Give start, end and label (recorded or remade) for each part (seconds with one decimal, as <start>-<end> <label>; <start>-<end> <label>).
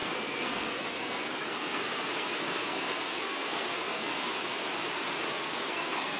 0.0-4.6 remade; 4.6-5.3 recorded; 5.3-6.2 remade